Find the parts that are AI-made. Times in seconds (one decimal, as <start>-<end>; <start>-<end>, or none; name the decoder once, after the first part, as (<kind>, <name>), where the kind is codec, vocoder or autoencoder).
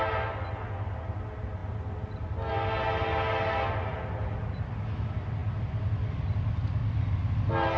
none